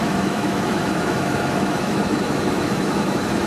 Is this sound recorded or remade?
remade